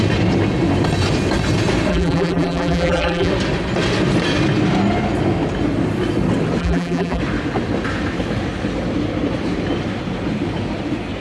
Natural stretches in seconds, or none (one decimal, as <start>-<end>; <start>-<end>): 0.0-1.9; 3.3-6.6; 7.2-11.2